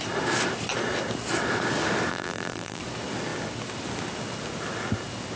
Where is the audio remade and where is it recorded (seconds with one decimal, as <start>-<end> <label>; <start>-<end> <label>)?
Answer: 0.0-2.1 recorded; 2.1-2.8 remade; 2.8-5.4 recorded